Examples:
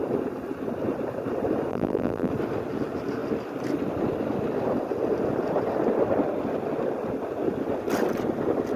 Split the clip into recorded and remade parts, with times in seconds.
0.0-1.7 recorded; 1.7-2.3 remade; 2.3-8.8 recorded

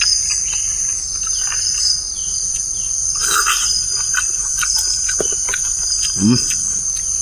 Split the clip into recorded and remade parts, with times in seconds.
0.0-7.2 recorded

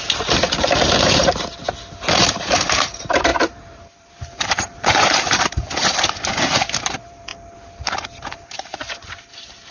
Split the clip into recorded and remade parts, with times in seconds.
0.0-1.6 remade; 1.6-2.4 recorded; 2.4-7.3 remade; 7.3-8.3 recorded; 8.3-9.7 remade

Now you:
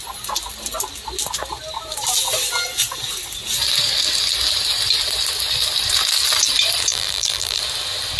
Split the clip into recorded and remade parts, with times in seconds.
0.0-6.9 recorded; 6.9-7.6 remade; 7.6-8.2 recorded

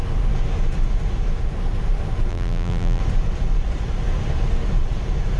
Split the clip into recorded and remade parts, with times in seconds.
0.0-2.3 recorded; 2.3-3.0 remade; 3.0-5.4 recorded

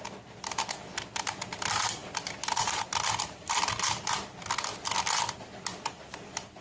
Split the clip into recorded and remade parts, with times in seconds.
0.0-6.6 recorded

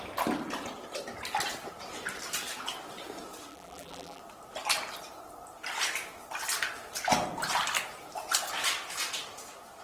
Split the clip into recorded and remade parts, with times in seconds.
0.0-3.5 recorded; 3.5-4.2 remade; 4.2-9.8 recorded

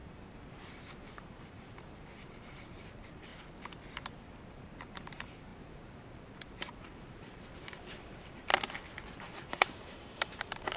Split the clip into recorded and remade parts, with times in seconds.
0.0-3.3 remade; 3.3-4.5 recorded; 4.5-8.5 remade; 8.5-9.1 recorded; 9.1-10.8 remade